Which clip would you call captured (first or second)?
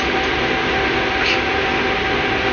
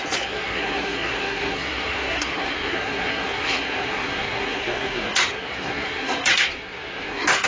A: first